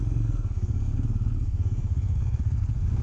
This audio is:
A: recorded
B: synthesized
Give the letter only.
B